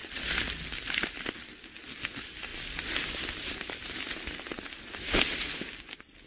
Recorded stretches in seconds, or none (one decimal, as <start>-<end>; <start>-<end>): 0.0-6.3